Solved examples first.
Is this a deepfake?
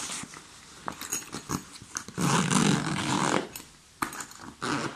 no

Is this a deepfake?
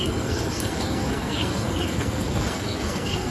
yes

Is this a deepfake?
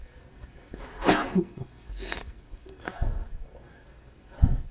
yes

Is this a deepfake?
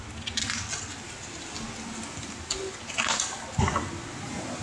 no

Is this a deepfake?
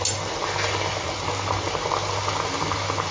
no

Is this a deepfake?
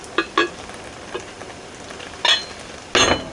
no